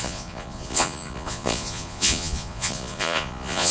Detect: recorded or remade remade